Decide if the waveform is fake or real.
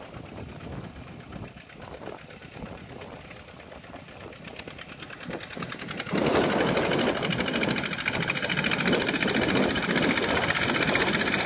real